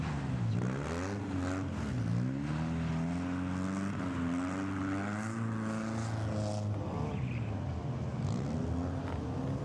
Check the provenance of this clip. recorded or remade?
recorded